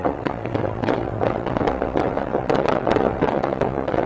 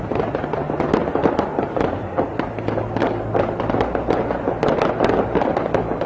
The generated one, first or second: first